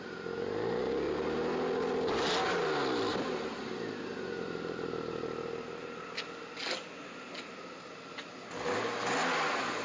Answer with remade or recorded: recorded